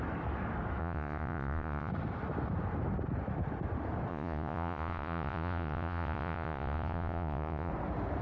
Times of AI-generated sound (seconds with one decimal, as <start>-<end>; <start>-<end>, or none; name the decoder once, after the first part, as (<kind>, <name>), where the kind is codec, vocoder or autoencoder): 0.8-1.9 (vocoder, Vocos); 4.1-7.7